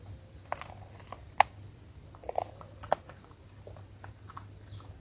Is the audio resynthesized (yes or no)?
no